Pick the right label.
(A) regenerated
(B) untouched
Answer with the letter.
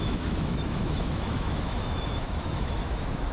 A